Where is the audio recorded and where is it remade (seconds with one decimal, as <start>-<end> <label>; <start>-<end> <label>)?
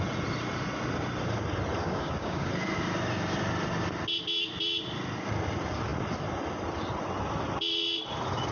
0.0-1.8 recorded; 1.8-2.5 remade; 2.5-8.5 recorded